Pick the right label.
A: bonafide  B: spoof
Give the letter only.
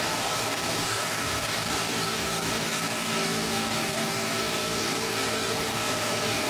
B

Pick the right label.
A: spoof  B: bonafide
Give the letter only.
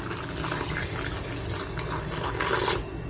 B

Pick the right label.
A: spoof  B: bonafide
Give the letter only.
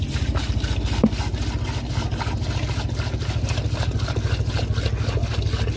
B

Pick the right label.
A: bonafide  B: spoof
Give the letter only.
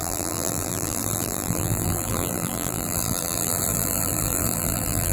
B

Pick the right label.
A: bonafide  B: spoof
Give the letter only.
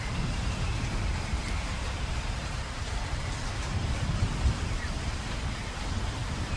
B